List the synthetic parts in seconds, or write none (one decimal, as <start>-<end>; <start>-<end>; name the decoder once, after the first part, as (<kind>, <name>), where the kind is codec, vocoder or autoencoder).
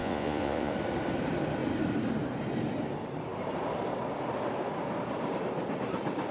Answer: 0.0-0.7 (vocoder, Vocos)